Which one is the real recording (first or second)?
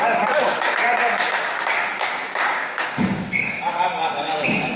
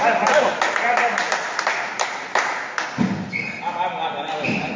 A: second